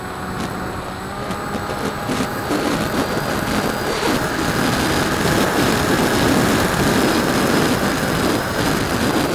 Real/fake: real